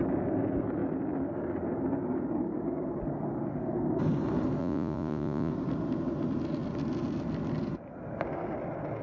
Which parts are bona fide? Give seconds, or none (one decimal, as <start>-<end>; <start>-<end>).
0.0-4.6; 5.5-9.0